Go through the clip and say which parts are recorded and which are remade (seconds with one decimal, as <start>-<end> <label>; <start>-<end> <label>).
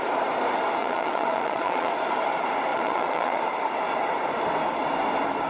0.0-0.8 recorded; 0.8-1.9 remade; 1.9-2.7 recorded; 2.7-3.4 remade; 3.4-5.5 recorded